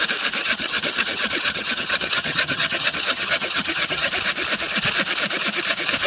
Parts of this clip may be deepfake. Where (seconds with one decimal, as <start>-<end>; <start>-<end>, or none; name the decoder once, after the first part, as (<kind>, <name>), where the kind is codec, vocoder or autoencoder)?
0.4-4.1 (vocoder, HiFi-GAN)